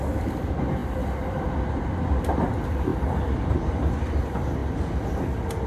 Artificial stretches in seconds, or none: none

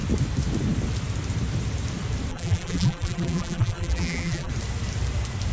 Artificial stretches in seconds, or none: 2.3-4.5 (vocoder, BigVGAN v2)